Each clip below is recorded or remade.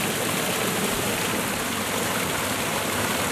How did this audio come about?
recorded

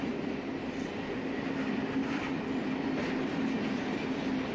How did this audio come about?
remade